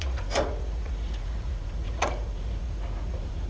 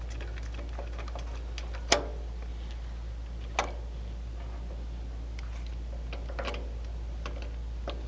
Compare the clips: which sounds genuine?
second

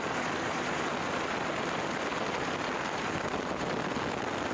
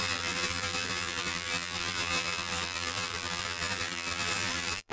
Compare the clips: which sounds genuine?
first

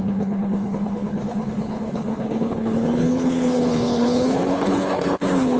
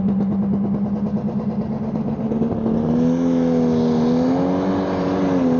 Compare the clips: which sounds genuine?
second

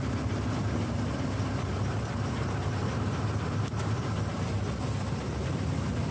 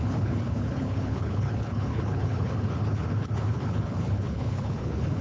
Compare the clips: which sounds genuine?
first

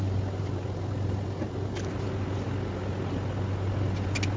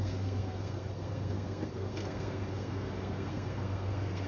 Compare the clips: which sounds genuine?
first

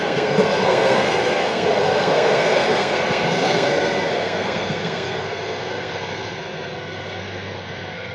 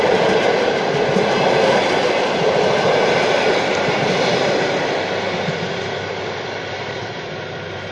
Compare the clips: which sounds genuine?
second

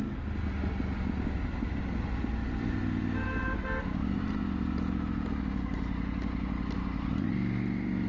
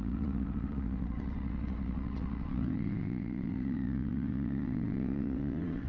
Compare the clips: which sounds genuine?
first